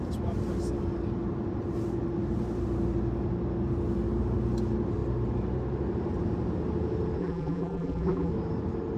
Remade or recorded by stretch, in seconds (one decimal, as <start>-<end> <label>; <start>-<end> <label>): 0.0-7.2 recorded; 7.2-8.3 remade; 8.3-9.0 recorded